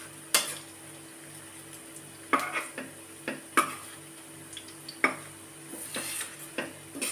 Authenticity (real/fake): real